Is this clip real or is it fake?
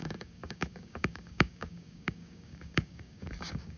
fake